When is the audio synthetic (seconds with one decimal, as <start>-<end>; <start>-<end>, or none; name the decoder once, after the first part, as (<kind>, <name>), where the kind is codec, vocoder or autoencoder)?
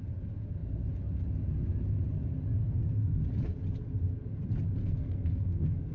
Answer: 2.6-3.2 (codec, SNAC); 4.8-5.9